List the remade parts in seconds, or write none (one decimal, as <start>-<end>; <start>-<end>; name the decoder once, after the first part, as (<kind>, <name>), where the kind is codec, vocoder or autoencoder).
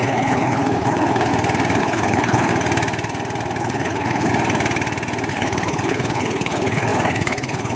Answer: 0.0-1.3 (codec, HILCodec); 1.8-2.5; 3.6-4.3; 5.3-7.8